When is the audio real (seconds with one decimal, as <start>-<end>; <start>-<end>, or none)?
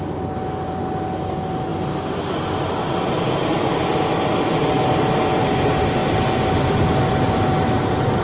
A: 0.0-8.2